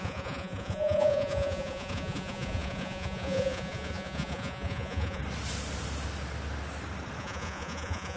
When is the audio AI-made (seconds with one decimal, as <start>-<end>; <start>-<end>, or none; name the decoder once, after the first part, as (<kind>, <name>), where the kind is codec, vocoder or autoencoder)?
0.0-5.2 (vocoder, Vocos); 7.2-8.2